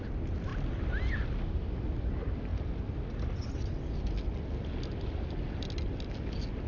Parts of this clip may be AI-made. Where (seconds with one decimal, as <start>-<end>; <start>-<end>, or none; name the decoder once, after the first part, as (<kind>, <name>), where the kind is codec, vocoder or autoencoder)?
none